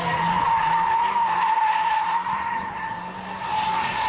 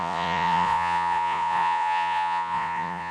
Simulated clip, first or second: second